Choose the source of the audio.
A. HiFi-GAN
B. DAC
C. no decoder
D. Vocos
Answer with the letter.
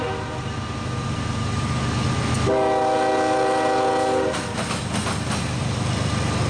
C